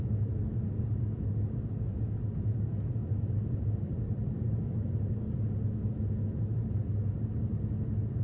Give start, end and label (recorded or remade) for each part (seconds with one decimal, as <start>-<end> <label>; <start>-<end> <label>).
0.0-3.0 recorded; 3.0-5.2 remade; 5.2-8.2 recorded